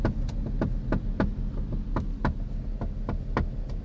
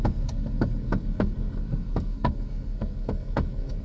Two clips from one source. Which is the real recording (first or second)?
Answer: first